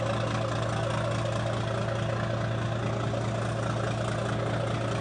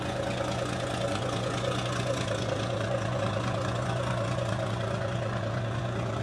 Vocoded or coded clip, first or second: second